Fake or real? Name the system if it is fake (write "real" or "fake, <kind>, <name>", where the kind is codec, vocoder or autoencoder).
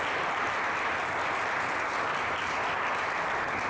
real